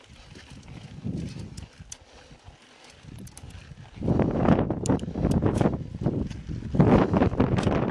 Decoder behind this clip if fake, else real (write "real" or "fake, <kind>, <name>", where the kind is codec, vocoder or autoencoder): real